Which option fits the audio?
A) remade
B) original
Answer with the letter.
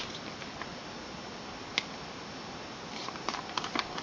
B